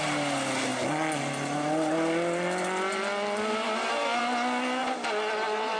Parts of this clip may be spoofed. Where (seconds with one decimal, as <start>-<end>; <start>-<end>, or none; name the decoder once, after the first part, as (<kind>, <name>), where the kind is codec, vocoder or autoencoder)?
none